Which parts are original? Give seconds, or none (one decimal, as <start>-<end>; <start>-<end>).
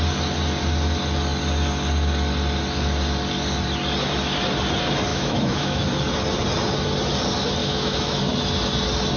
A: 0.0-5.1; 5.8-7.6; 8.2-9.2